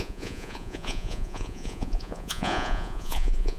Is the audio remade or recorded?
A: remade